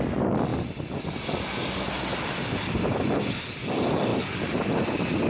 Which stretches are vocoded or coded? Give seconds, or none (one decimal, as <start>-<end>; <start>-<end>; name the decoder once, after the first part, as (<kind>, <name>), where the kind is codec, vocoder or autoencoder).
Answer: none